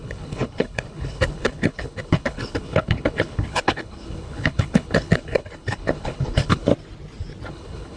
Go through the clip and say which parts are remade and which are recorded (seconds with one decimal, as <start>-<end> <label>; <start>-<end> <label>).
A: 0.0-6.7 remade; 6.7-7.5 recorded; 7.5-8.0 remade